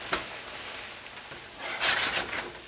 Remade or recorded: recorded